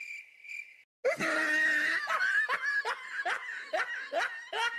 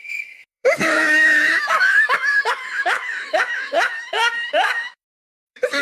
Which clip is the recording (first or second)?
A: first